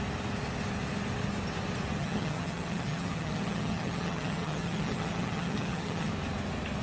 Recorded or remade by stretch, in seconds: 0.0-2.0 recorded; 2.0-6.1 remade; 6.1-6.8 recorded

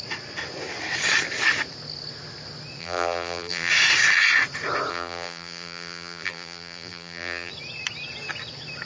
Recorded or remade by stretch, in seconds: 0.0-2.8 recorded; 2.8-3.7 remade; 3.7-4.9 recorded; 4.9-7.5 remade; 7.5-8.9 recorded

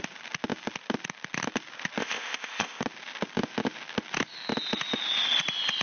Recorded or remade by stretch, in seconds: 0.0-2.0 recorded; 2.0-2.8 remade; 2.8-5.8 recorded

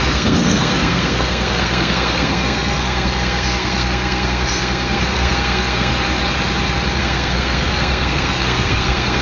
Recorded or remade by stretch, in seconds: 0.0-5.9 remade; 5.9-7.0 recorded; 7.0-9.2 remade

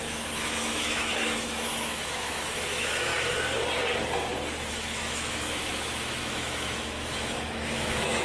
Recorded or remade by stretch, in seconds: 0.0-3.1 remade; 3.1-4.7 recorded; 4.7-8.2 remade